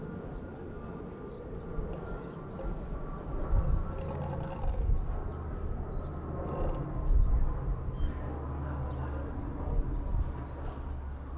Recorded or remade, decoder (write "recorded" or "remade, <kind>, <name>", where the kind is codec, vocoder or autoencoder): recorded